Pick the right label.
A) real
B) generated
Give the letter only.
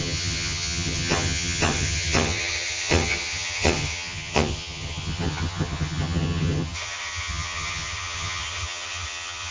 B